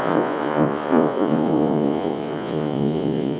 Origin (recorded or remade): remade